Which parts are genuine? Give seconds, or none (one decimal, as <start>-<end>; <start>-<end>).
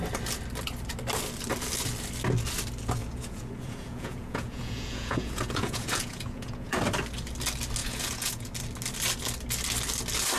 0.0-3.0; 6.8-7.8; 8.5-10.4